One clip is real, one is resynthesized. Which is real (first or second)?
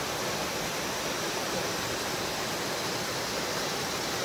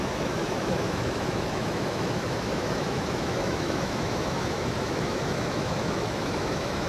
first